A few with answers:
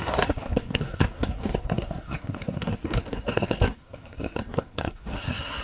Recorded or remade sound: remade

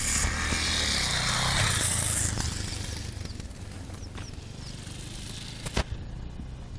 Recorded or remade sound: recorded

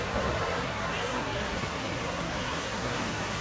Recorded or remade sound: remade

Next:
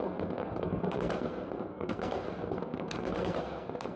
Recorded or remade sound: remade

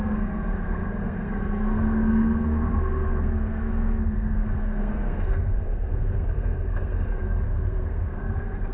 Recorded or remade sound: remade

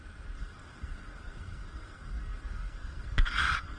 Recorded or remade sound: remade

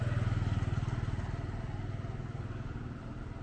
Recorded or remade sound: recorded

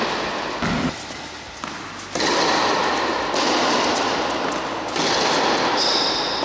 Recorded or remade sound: recorded